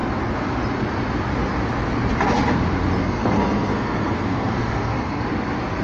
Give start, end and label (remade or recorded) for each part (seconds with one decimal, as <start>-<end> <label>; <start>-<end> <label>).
0.0-3.0 recorded; 3.0-5.2 remade; 5.2-5.8 recorded